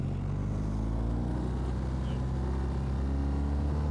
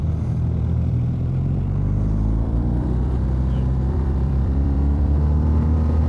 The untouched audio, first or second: first